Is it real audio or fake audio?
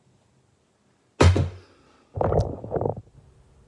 real